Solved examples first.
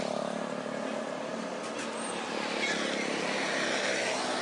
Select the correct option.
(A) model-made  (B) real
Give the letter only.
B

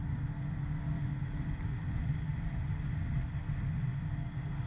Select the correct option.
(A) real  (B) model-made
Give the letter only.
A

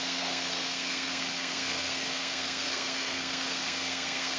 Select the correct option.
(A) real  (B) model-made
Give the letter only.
B